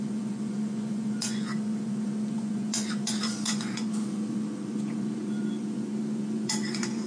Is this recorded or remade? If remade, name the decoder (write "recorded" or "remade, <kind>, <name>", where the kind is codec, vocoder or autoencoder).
remade, vocoder, Vocos